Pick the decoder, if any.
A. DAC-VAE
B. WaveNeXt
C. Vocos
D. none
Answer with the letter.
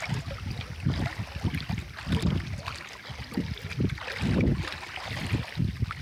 D